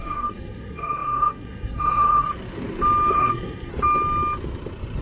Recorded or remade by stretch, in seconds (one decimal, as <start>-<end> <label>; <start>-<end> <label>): 0.0-2.3 remade; 2.3-3.1 recorded; 3.1-3.7 remade; 3.7-5.0 recorded